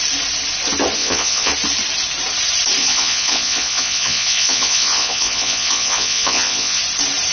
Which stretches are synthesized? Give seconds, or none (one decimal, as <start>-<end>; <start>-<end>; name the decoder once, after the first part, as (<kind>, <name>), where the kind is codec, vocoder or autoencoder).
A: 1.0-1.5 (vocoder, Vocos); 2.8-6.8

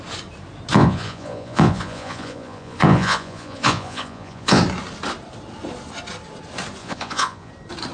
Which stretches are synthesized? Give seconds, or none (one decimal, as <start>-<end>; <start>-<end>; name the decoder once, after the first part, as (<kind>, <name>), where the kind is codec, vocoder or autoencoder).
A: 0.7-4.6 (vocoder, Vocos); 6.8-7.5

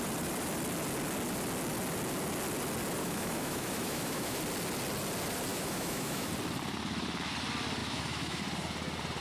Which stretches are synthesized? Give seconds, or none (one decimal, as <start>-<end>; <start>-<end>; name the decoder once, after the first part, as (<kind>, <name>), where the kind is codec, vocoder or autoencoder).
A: 3.0-4.4 (autoencoder, DAC-VAE); 5.5-6.3; 7.8-8.4

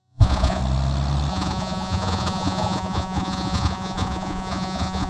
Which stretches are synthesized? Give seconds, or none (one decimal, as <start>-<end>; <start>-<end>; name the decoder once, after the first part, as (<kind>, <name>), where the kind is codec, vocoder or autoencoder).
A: 0.0-0.6 (vocoder, Vocos); 1.3-5.1

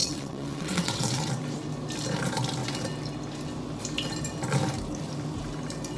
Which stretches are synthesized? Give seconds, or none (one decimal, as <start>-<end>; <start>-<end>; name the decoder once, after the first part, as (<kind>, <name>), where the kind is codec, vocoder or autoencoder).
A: 0.0-1.3 (vocoder, WaveNeXt)

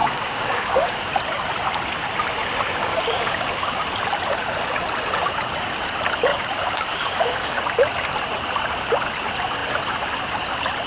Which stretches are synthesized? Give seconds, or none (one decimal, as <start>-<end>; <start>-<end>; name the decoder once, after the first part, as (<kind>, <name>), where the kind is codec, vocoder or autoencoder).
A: 0.0-1.1 (codec, DAC); 2.8-3.8; 6.3-7.6